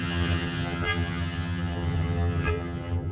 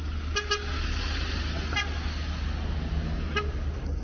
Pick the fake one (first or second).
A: first